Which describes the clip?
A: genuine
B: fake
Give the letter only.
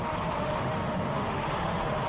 B